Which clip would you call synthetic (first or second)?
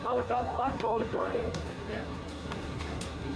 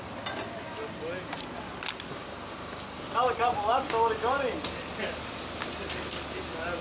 first